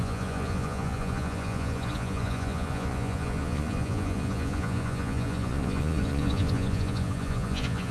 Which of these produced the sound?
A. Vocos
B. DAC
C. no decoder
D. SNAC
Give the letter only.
A